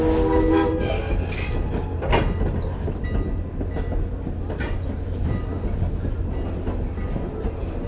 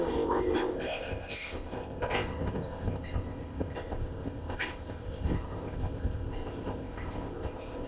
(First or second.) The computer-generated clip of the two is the second